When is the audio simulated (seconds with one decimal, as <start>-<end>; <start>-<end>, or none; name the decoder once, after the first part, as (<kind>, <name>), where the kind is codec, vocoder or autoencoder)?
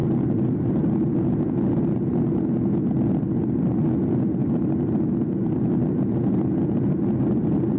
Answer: none